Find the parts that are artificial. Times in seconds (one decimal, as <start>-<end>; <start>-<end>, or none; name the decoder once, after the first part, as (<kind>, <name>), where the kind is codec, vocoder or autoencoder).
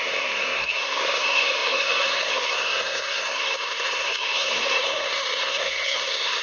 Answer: 0.0-6.4 (codec, SNAC)